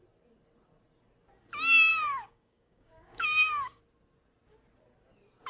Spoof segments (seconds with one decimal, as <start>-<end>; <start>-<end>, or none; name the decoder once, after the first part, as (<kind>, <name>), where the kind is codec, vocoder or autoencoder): 1.9-3.8 (codec, DAC)